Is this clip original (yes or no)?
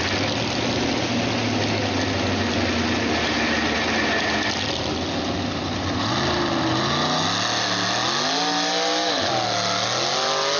yes